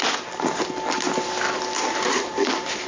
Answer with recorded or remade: recorded